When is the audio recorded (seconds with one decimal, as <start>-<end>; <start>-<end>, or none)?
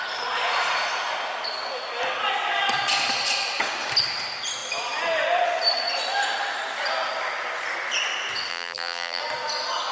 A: 0.0-8.5; 9.2-9.9